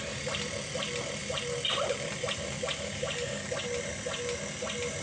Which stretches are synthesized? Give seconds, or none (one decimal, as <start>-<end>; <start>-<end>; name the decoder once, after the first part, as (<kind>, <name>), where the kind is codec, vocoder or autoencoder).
none